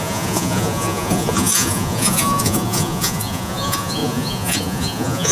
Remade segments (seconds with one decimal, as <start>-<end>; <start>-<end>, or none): 0.0-5.3